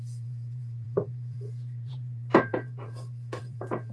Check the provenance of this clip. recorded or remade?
remade